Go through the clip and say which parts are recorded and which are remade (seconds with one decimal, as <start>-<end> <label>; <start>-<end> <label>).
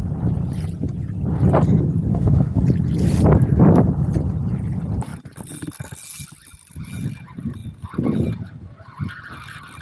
0.0-2.1 recorded; 2.1-2.6 remade; 2.6-9.8 recorded